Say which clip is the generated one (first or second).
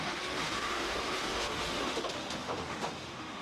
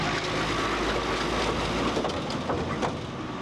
first